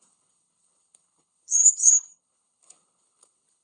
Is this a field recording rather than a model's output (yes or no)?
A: no